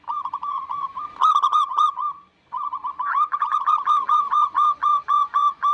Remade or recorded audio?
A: remade